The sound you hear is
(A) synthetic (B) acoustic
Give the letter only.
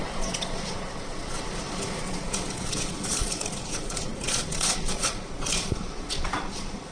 A